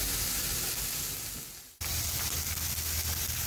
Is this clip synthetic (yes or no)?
no